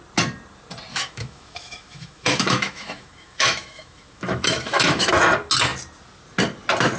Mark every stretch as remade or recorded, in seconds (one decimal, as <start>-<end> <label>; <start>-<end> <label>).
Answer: 0.0-0.9 recorded; 0.9-5.1 remade; 5.1-7.0 recorded

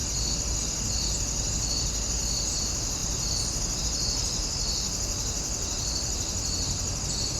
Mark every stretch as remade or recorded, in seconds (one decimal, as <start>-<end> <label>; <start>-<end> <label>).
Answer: 0.0-7.4 recorded